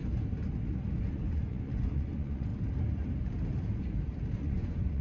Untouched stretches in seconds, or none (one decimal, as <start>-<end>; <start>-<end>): 0.0-1.0; 2.5-4.4